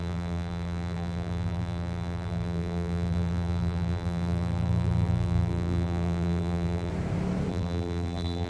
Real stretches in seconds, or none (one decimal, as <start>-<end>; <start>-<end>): 6.9-7.5

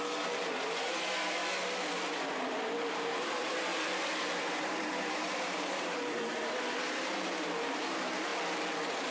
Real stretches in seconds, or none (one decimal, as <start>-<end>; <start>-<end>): 1.4-2.1; 3.7-4.5; 8.3-9.1

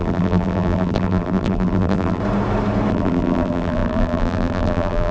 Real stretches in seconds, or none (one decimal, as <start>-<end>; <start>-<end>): 2.2-2.9

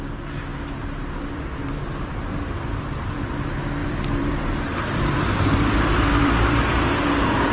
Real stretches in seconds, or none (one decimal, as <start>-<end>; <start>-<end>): 0.0-0.5; 3.2-3.8; 6.6-7.5

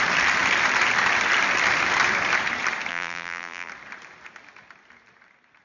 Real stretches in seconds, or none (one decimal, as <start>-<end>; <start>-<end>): 0.0-2.9; 3.7-5.6

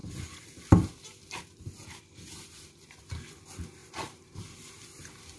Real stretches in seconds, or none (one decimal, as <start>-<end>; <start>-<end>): 0.0-3.8; 4.7-5.4

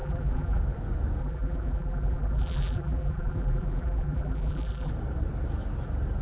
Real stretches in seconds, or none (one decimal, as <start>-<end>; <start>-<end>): 0.6-1.2; 4.9-6.2

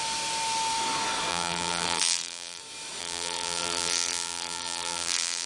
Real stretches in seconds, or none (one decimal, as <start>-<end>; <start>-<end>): 0.0-1.3; 2.6-3.0